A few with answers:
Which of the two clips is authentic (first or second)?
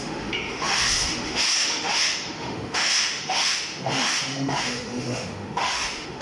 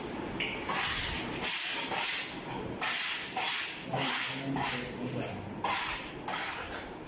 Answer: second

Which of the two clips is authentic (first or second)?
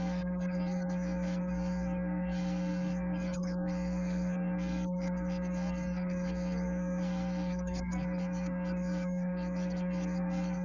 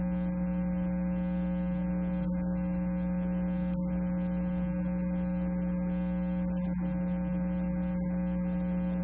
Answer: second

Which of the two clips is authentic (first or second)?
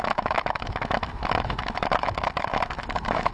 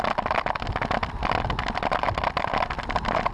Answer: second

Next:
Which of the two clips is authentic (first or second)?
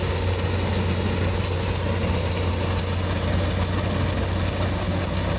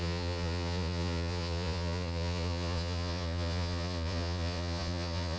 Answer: first